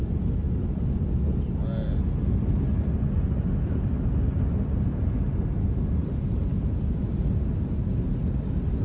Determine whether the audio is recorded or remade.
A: recorded